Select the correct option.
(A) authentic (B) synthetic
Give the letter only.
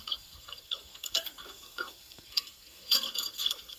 B